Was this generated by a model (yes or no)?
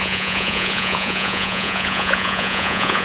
yes